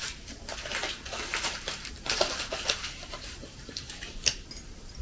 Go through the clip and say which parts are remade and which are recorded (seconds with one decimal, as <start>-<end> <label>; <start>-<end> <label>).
0.0-1.3 recorded; 1.3-4.3 remade; 4.3-5.0 recorded